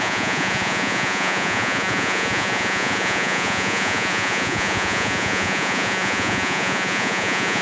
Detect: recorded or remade remade